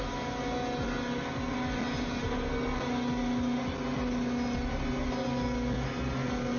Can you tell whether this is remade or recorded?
recorded